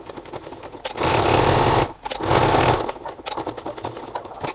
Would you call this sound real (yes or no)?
yes